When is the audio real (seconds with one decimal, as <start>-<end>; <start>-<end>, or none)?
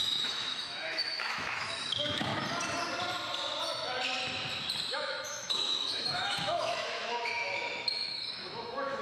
2.3-4.9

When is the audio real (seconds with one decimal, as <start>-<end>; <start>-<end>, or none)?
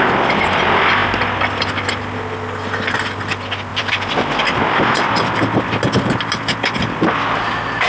0.0-3.7; 4.4-7.9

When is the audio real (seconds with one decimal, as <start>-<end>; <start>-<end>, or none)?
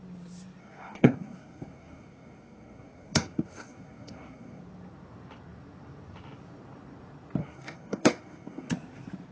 0.0-0.6; 4.6-7.4; 8.7-9.3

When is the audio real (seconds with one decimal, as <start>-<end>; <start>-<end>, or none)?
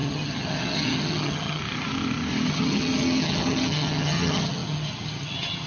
1.6-2.5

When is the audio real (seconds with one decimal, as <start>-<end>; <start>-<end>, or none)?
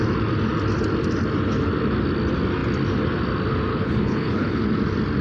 0.0-3.7; 4.6-5.2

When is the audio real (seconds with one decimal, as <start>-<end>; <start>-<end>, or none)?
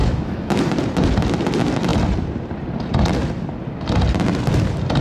0.6-5.0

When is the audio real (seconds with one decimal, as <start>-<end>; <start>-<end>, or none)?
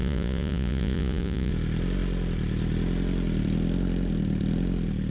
1.5-5.1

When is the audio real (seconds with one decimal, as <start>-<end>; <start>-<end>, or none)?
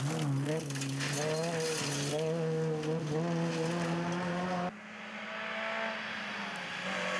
0.0-7.2